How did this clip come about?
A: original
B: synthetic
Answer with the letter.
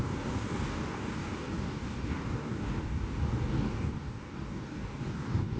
B